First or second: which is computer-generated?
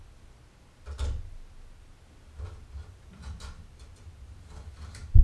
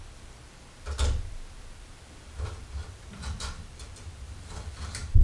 second